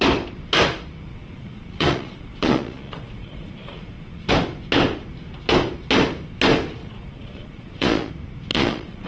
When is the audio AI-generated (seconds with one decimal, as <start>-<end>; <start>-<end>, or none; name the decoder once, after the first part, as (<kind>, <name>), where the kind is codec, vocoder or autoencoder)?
1.1-4.3 (vocoder, Vocos); 6.8-8.1; 8.5-9.1